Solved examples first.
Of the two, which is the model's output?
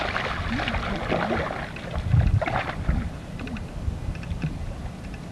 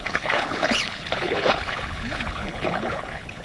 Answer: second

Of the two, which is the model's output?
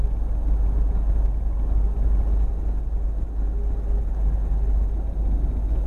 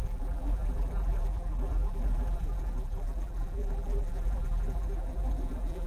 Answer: second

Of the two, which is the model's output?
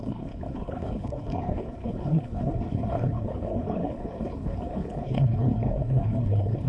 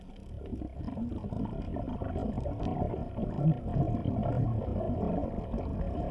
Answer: first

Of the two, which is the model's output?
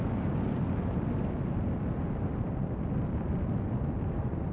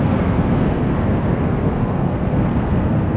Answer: second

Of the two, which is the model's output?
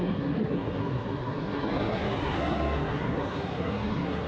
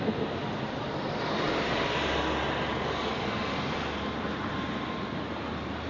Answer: first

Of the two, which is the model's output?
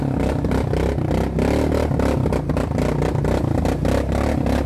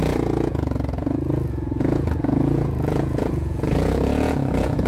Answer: second